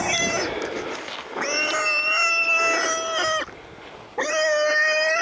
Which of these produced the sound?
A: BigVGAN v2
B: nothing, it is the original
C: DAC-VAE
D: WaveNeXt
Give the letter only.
B